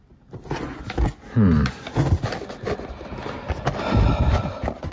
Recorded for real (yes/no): yes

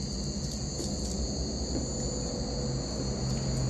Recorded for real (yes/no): yes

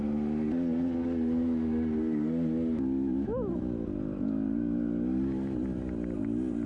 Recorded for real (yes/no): yes